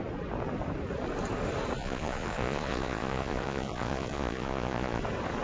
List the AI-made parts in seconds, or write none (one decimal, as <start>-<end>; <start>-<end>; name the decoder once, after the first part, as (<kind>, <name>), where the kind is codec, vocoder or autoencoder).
1.8-5.0 (vocoder, Vocos)